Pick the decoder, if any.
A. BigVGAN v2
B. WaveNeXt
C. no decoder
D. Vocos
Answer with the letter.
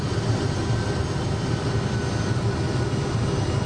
C